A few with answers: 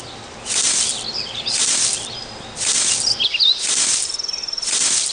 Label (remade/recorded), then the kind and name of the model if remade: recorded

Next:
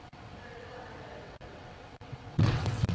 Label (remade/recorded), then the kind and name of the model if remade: remade, vocoder, WaveNeXt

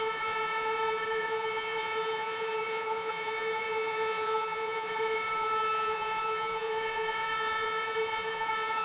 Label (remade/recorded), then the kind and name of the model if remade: remade, vocoder, Vocos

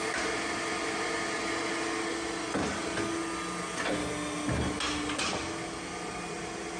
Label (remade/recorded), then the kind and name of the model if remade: recorded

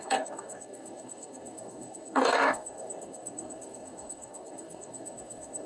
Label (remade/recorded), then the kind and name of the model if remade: remade, codec, DAC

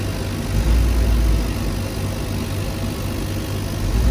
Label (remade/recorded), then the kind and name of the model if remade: recorded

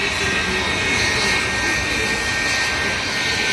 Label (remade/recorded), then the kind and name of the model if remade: recorded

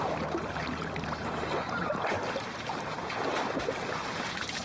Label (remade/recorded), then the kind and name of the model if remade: remade, vocoder, BigVGAN v2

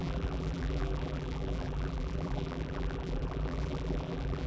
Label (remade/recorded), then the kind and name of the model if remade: remade, vocoder, BigVGAN v2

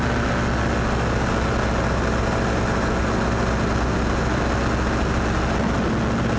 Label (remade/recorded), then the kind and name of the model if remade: recorded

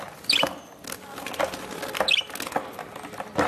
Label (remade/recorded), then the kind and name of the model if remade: recorded